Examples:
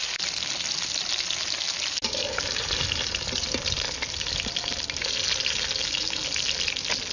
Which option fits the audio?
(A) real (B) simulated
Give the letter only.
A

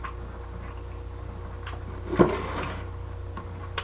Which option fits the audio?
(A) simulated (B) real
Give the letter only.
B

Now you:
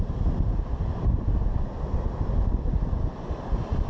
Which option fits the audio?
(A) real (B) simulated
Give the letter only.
A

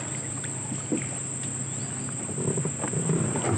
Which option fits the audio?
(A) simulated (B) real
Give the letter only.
B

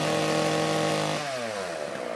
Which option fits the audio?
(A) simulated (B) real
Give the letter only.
B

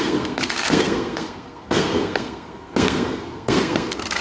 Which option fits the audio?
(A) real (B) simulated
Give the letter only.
B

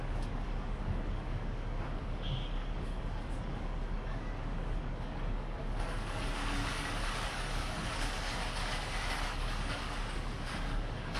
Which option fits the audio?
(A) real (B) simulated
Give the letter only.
B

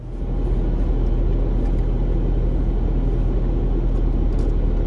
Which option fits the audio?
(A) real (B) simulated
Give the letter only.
A